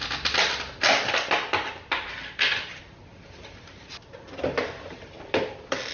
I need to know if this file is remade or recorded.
recorded